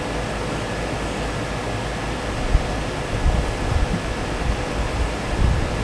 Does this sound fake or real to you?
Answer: real